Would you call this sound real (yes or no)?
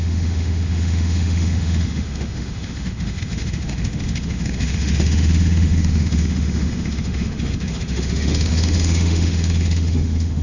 no